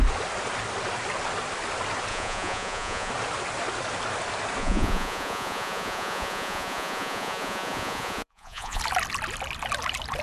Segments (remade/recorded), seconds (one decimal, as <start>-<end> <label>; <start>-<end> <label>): 0.0-2.1 recorded; 2.1-3.1 remade; 3.1-4.6 recorded; 4.6-8.8 remade; 8.8-10.2 recorded